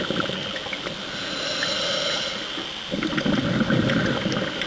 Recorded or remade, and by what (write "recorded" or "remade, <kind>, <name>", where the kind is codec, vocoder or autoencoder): recorded